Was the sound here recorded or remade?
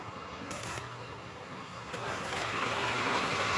remade